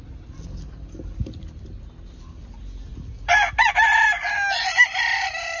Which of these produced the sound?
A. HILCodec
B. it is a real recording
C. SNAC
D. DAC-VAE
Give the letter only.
B